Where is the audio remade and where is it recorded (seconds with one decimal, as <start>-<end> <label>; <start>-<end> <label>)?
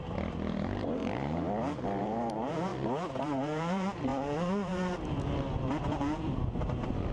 0.0-1.0 remade; 1.0-2.0 recorded; 2.0-2.7 remade; 2.7-3.2 recorded; 3.2-7.1 remade